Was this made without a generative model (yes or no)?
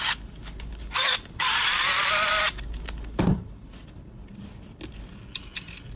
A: yes